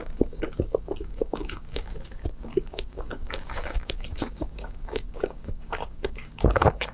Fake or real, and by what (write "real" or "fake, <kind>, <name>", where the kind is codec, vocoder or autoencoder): fake, codec, DAC